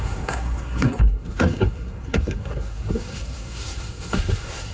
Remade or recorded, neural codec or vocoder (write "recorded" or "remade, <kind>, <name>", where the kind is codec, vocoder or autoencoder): remade, codec, SNAC